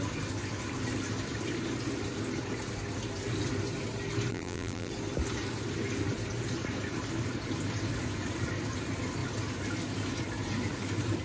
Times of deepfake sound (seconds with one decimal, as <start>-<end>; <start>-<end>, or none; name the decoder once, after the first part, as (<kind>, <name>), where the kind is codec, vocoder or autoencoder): 4.3-4.9 (vocoder, BigVGAN v2)

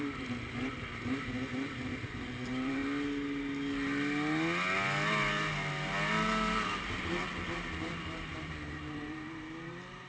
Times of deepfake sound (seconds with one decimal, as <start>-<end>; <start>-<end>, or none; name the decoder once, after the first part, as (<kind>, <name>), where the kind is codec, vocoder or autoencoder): 0.0-2.8 (vocoder, BigVGAN v2); 6.8-10.1

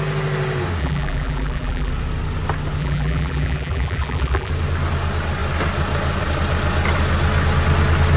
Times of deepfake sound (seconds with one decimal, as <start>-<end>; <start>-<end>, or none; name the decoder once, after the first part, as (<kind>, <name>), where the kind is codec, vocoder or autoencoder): 0.8-1.9 (vocoder, BigVGAN v2); 2.8-4.5